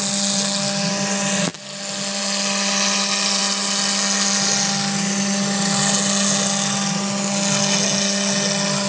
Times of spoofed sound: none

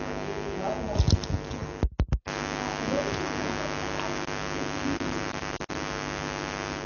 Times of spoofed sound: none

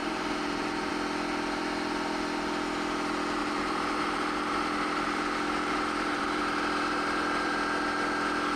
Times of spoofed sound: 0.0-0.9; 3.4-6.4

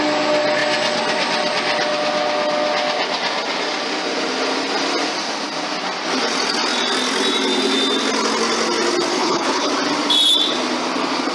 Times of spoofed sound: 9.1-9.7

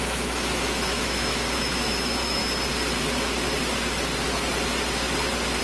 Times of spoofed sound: 0.0-2.4

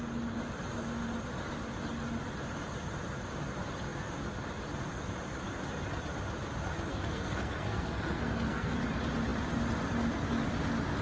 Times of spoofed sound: 6.9-8.8